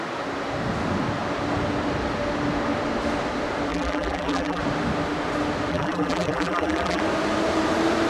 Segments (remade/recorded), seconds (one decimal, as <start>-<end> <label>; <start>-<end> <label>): 0.0-3.7 recorded; 3.7-4.6 remade; 4.6-5.7 recorded; 5.7-7.0 remade; 7.0-8.1 recorded